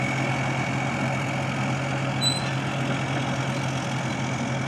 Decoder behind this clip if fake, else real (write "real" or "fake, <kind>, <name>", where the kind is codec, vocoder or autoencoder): real